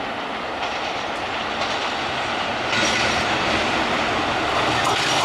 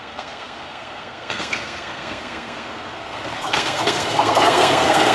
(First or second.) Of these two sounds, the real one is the first